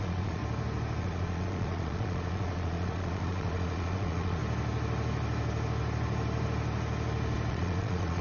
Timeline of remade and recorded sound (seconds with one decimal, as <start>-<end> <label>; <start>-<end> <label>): 0.0-0.4 remade; 0.4-1.0 recorded; 1.0-4.4 remade; 4.4-7.5 recorded; 7.5-8.2 remade